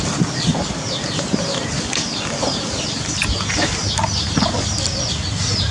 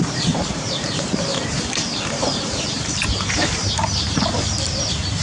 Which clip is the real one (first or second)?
first